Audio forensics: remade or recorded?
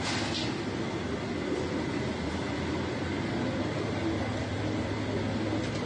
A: recorded